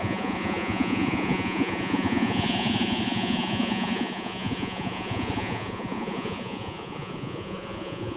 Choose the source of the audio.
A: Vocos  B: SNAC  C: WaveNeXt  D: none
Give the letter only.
A